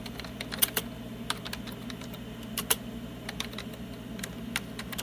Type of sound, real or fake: real